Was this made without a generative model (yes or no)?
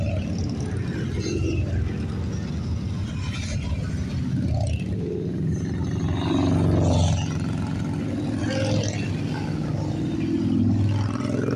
yes